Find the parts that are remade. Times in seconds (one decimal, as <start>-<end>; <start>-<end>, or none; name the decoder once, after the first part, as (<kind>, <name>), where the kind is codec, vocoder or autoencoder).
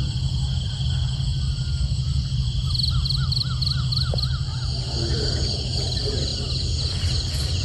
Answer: none